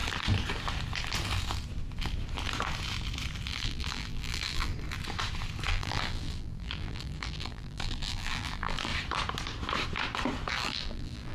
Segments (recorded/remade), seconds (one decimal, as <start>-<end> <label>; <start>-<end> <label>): 0.0-3.5 recorded; 3.5-4.7 remade; 4.7-5.7 recorded; 5.7-8.9 remade; 8.9-10.5 recorded; 10.5-11.3 remade